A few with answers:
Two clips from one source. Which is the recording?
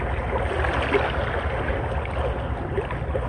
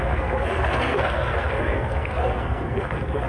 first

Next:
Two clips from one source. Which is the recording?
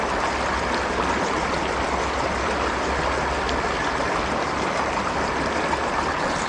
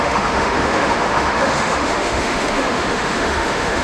first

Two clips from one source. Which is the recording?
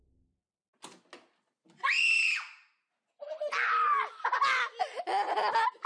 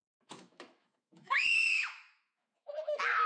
first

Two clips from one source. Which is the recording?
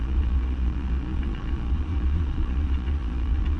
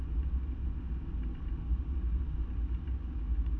second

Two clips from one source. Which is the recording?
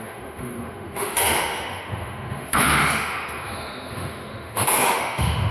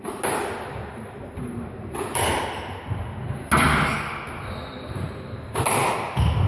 second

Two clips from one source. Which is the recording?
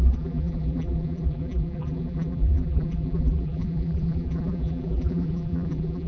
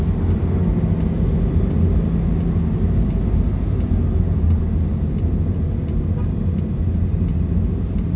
second